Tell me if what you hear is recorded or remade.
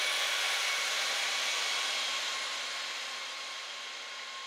recorded